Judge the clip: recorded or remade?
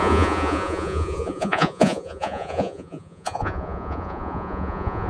remade